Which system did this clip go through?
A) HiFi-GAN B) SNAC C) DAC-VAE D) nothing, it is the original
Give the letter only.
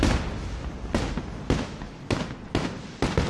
D